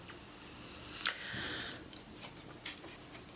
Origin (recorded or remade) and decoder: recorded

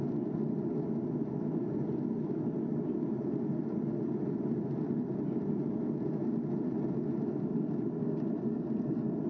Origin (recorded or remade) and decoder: recorded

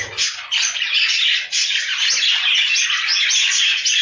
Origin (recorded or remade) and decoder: recorded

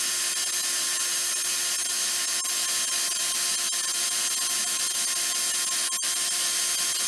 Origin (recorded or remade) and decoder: recorded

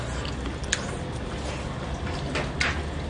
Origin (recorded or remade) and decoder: recorded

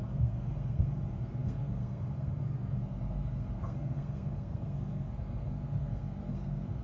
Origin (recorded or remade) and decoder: remade, codec, SNAC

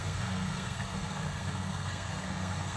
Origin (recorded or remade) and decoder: remade, codec, SNAC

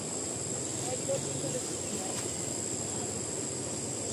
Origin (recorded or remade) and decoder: recorded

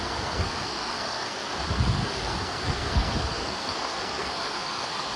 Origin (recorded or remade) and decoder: remade, codec, SNAC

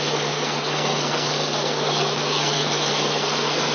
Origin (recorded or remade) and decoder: remade, codec, SNAC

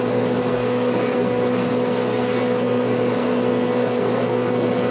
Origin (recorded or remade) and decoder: remade, codec, SNAC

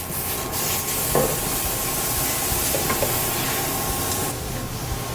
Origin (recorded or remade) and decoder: recorded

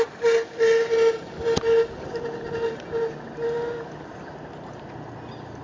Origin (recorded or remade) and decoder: recorded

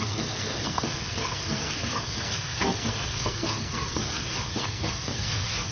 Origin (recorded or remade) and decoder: remade, codec, SNAC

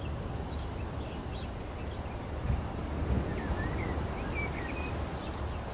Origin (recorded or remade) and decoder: recorded